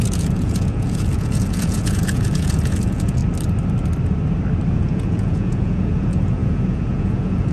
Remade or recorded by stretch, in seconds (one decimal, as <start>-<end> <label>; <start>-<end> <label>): 0.0-3.2 remade; 3.2-4.7 recorded; 4.7-7.5 remade